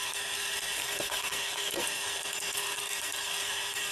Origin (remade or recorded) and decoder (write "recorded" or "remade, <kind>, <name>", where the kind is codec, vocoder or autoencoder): remade, codec, SNAC